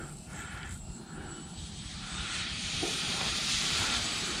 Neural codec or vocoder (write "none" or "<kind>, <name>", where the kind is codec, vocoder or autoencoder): vocoder, BigVGAN v2